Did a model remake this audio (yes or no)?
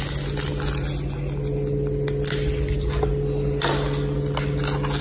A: no